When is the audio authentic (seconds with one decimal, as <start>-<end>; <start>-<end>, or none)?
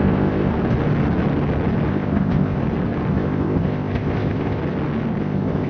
0.5-1.9; 2.6-3.1; 4.6-5.2